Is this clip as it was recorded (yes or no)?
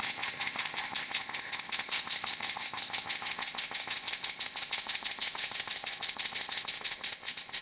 no